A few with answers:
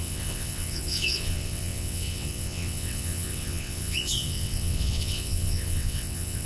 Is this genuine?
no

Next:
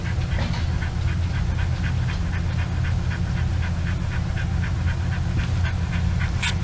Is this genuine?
yes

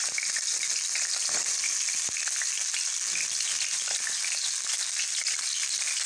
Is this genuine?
yes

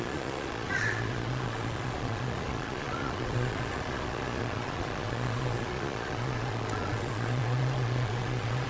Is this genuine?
no